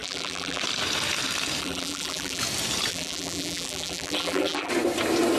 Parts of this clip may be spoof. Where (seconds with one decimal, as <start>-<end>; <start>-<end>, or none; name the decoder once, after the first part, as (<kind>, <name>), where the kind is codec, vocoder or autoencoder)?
0.0-0.6 (vocoder, BigVGAN v2); 1.6-2.4; 2.9-4.7